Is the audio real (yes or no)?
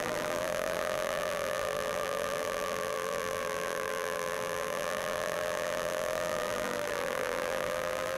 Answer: no